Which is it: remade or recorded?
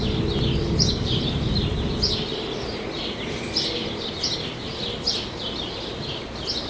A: recorded